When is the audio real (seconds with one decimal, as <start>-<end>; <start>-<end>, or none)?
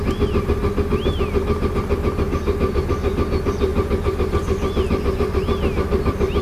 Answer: 0.0-6.4